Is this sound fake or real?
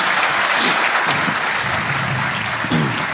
real